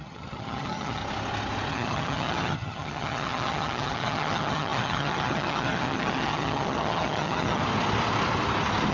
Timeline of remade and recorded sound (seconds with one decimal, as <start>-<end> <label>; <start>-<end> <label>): 0.0-1.0 remade; 1.0-1.7 recorded; 1.7-7.6 remade; 7.6-8.9 recorded